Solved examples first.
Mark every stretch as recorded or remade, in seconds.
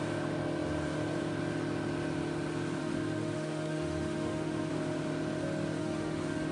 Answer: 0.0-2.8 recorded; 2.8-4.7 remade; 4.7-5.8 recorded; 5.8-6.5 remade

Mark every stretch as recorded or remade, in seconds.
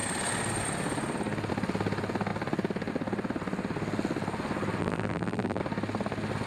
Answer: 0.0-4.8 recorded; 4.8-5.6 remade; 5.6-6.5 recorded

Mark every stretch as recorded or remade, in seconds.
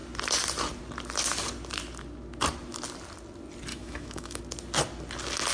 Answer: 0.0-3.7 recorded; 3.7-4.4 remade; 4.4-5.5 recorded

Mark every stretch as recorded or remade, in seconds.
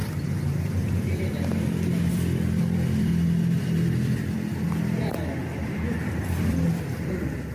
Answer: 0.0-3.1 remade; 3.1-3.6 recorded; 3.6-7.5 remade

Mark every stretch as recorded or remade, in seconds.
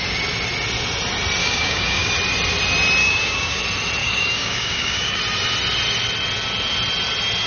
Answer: 0.0-1.4 recorded; 1.4-2.1 remade; 2.1-3.0 recorded; 3.0-3.6 remade; 3.6-4.0 recorded; 4.0-5.2 remade; 5.2-7.5 recorded